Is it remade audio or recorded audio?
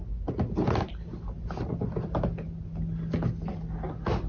recorded